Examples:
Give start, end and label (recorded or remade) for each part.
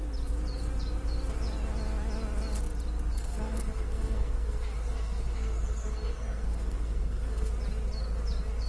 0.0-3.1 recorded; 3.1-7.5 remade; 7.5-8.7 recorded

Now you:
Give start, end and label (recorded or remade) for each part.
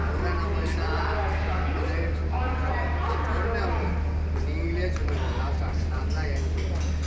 0.0-5.0 recorded; 5.0-6.0 remade; 6.0-7.1 recorded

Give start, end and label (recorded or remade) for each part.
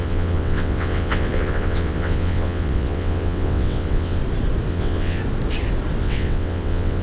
0.0-4.2 remade; 4.2-4.7 recorded; 4.7-5.2 remade; 5.2-6.0 recorded; 6.0-7.0 remade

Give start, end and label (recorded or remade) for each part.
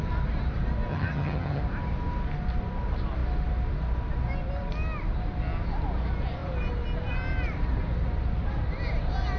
0.0-0.9 recorded; 0.9-1.6 remade; 1.6-9.4 recorded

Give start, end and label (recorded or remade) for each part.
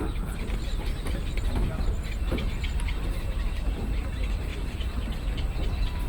0.0-6.1 remade